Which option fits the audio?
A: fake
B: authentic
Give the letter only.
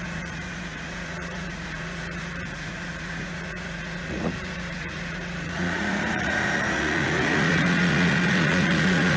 A